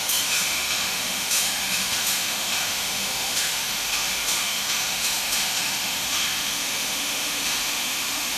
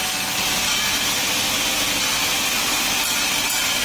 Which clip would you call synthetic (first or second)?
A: first